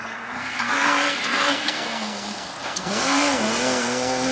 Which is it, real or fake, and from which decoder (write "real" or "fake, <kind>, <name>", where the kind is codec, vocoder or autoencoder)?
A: fake, codec, SNAC